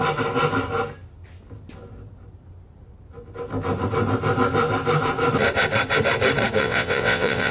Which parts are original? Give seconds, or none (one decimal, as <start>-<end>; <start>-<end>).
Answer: 0.0-6.6